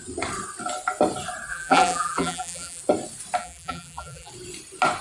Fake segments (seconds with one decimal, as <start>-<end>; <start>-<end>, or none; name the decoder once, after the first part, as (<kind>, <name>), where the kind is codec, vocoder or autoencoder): 1.5-2.8 (vocoder, BigVGAN v2); 3.4-4.3